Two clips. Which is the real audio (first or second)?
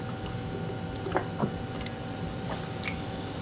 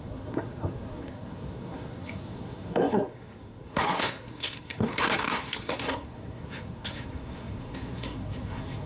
first